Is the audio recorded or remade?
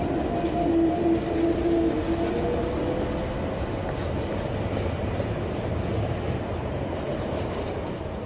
recorded